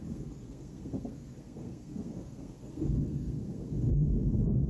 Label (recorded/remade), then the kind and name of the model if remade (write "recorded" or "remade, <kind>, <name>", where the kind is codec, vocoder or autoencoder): remade, codec, SNAC